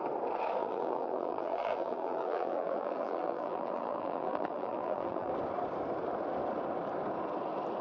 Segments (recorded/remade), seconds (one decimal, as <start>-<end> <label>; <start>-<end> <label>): 0.0-0.6 recorded; 0.6-5.3 remade; 5.3-7.8 recorded